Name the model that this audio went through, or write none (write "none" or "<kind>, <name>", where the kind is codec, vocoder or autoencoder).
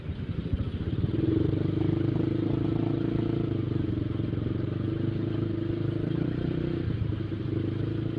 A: none